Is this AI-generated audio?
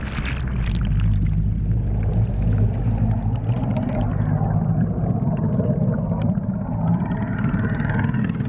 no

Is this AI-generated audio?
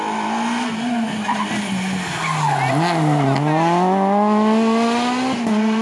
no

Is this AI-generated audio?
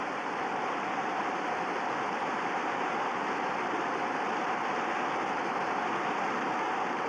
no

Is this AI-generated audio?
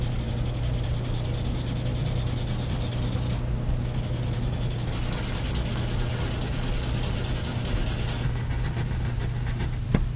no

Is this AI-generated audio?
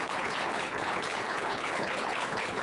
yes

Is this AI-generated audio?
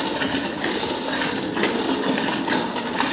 no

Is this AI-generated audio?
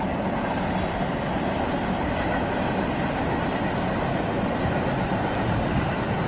no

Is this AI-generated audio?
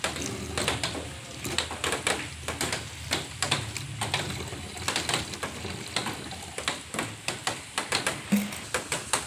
no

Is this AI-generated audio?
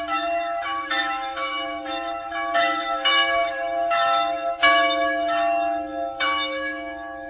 yes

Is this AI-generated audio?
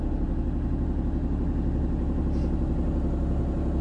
no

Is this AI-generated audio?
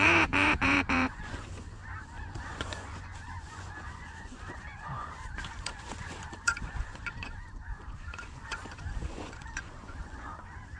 yes